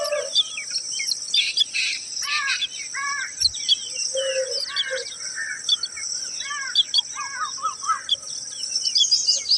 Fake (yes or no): no